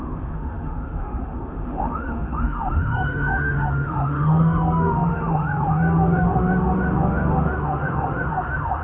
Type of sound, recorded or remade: remade